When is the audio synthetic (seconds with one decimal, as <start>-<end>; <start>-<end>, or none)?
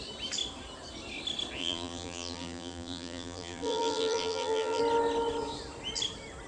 1.6-4.8